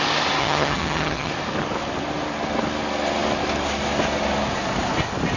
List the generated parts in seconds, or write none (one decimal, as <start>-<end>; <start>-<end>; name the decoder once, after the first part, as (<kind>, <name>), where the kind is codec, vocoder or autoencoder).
0.4-1.3 (vocoder, HiFi-GAN)